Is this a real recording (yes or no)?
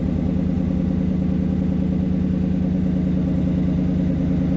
yes